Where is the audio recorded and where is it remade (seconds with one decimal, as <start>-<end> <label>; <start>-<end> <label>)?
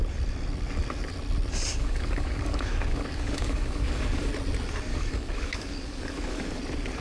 0.0-1.8 recorded; 1.8-4.3 remade; 4.3-4.9 recorded; 4.9-6.6 remade; 6.6-7.0 recorded